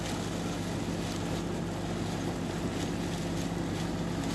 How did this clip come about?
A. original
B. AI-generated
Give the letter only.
A